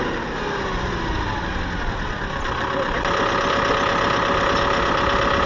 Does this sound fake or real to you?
real